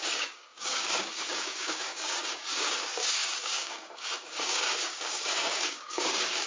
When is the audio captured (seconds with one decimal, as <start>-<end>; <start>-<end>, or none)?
none